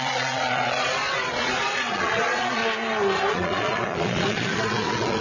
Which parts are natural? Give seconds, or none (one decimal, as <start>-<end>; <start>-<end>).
2.6-3.3